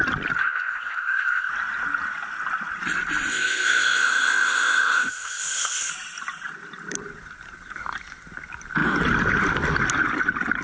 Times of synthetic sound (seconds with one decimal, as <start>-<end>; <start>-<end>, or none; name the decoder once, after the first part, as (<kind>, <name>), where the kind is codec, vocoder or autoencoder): 0.4-1.5 (codec, ZipCodec); 3.3-5.9

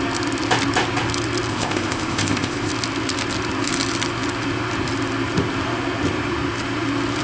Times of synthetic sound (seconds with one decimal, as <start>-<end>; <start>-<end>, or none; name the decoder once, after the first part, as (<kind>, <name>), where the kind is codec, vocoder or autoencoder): 1.5-2.7 (codec, ZipCodec)

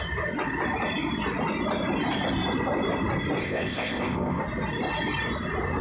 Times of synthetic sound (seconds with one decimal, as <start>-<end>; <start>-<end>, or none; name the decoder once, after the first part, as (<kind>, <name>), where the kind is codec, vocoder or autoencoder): 3.4-4.4 (codec, ZipCodec)

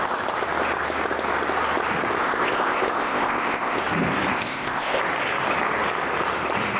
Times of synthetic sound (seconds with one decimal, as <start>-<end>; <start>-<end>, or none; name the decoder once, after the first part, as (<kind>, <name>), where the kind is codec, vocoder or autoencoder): 2.2-3.8 (codec, ZipCodec); 4.3-5.0

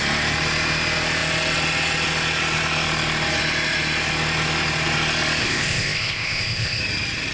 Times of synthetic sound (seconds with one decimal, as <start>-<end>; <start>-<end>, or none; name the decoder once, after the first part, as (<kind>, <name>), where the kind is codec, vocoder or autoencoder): 5.4-6.8 (codec, ZipCodec)

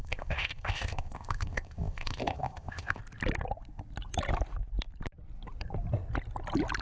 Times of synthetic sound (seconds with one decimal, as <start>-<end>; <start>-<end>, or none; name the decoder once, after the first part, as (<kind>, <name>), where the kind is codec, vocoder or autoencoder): 0.0-3.0 (codec, ZipCodec)

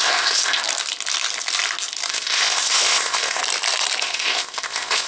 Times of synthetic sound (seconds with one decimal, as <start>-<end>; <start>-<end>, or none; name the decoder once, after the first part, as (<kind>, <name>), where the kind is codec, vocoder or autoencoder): 0.0-0.6 (codec, ZipCodec); 2.1-3.4; 4.0-5.1

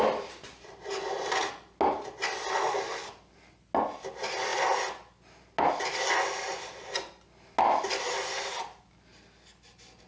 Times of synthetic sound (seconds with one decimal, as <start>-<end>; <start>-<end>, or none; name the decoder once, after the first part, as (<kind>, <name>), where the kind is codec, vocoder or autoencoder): none